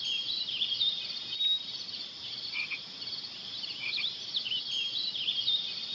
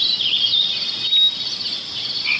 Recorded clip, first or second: second